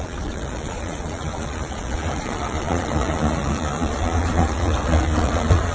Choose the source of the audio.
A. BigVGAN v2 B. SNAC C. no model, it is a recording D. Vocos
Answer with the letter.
D